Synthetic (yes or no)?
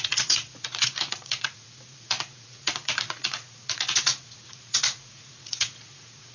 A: yes